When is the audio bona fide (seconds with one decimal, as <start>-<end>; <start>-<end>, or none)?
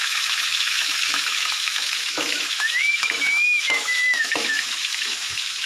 none